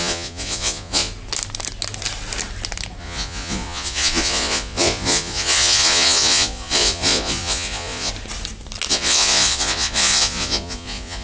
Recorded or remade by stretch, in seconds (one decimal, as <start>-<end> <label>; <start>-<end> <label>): 0.0-1.1 remade; 1.1-3.0 recorded; 3.0-8.1 remade; 8.1-8.9 recorded; 8.9-11.2 remade